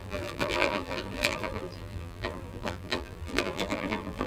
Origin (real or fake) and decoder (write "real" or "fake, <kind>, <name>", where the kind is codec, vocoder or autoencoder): fake, vocoder, BigVGAN v2